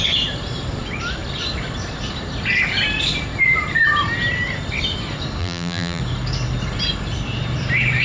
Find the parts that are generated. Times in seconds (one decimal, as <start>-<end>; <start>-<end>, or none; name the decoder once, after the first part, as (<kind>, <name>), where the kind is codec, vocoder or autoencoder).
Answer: 5.4-6.0 (vocoder, BigVGAN v2)